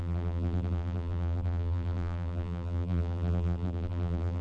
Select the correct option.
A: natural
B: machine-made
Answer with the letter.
B